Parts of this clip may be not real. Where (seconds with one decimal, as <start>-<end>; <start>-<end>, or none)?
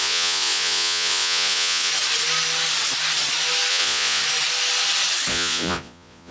0.0-1.9; 3.7-4.2; 5.3-6.3